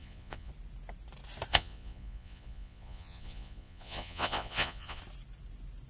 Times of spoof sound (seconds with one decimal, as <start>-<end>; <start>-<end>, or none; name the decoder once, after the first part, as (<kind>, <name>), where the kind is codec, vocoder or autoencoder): 0.0-0.5 (vocoder, Vocos); 1.5-5.0